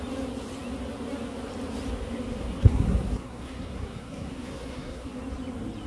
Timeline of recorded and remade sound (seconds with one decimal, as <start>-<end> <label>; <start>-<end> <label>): 0.0-2.3 recorded; 2.3-5.2 remade; 5.2-5.9 recorded